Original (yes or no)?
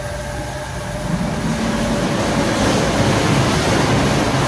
yes